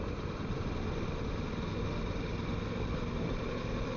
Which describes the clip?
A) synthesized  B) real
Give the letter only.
B